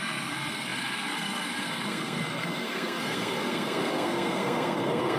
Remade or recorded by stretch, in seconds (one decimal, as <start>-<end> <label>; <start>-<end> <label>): 0.0-5.2 remade